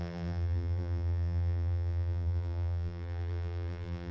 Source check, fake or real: fake